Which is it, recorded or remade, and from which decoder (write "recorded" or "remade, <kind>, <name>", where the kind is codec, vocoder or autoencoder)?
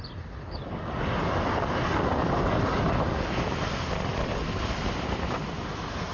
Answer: recorded